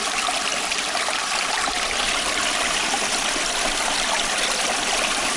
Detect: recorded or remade recorded